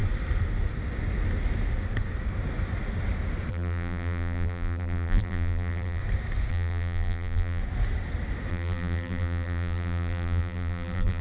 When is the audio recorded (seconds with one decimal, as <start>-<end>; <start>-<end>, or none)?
0.0-3.5; 6.0-6.5; 7.6-8.5